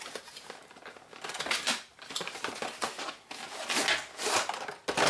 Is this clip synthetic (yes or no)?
no